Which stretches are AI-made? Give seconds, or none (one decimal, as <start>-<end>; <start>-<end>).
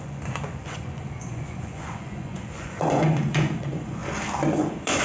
0.0-4.0; 4.6-5.0